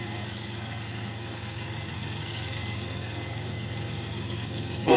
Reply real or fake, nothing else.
fake